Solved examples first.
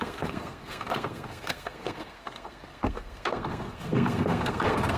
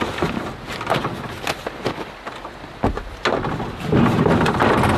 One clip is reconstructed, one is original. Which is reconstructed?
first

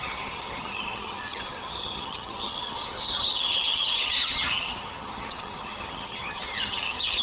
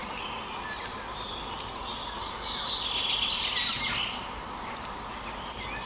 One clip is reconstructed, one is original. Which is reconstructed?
first